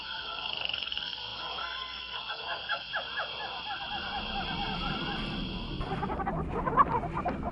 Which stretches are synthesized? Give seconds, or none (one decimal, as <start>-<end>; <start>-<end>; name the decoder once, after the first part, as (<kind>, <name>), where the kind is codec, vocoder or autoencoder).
0.0-2.9 (codec, SNAC)